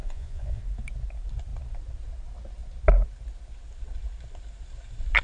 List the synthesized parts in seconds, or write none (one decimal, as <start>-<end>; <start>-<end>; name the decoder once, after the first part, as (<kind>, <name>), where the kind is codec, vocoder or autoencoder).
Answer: 0.0-0.6 (vocoder, Vocos)